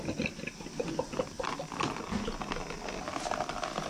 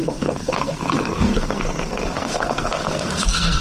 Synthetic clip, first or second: second